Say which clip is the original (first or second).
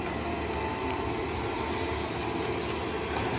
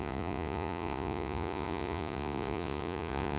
first